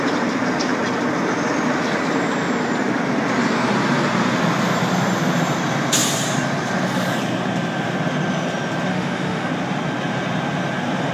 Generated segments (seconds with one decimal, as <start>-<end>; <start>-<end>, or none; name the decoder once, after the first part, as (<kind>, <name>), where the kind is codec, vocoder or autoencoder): 8.9-9.5 (autoencoder, DAC-VAE)